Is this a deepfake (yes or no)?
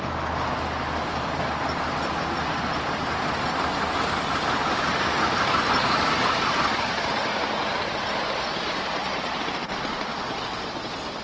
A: no